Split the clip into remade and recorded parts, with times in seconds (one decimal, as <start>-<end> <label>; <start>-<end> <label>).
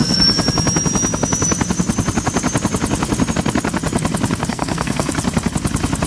0.0-4.5 recorded; 4.5-5.1 remade; 5.1-6.1 recorded